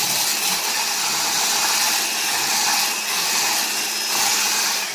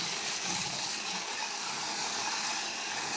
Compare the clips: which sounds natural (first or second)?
first